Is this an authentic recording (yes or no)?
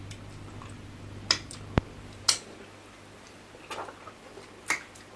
yes